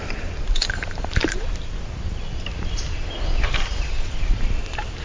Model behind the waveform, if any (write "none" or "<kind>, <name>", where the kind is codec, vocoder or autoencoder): vocoder, BigVGAN v2